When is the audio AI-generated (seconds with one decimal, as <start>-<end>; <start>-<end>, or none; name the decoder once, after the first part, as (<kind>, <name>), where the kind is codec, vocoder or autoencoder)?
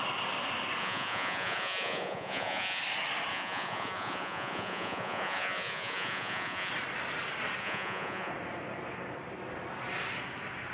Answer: 0.8-2.8 (vocoder, Vocos); 3.3-6.7; 7.6-8.3